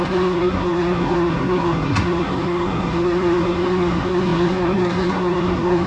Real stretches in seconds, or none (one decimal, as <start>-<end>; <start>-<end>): none